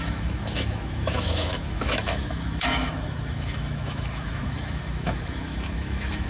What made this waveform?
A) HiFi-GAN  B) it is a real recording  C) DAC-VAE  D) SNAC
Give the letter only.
C